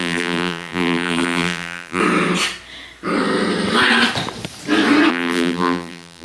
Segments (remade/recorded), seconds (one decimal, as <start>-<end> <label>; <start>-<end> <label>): 0.0-2.0 remade; 2.0-5.1 recorded; 5.1-6.2 remade